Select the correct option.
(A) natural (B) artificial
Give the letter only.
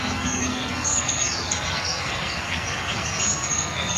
B